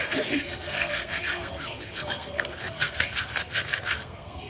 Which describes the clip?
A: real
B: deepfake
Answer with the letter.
B